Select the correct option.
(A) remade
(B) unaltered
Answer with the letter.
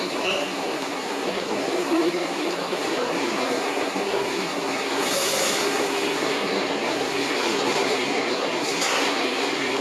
A